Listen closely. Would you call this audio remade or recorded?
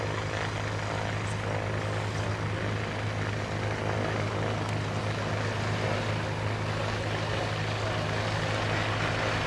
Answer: recorded